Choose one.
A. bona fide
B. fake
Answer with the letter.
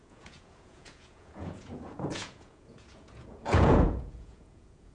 B